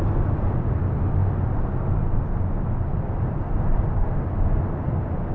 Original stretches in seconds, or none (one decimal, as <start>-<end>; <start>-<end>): 0.0-5.3